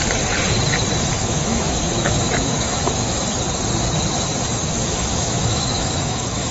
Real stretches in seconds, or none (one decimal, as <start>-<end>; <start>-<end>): 0.0-1.2; 3.2-4.6